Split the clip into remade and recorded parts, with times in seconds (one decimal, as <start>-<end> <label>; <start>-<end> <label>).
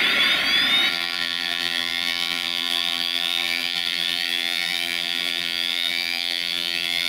0.0-0.9 recorded; 0.9-7.1 remade